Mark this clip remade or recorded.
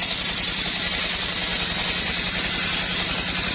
recorded